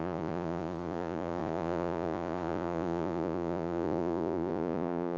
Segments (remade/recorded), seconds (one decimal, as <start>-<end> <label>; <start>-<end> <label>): 0.0-5.2 remade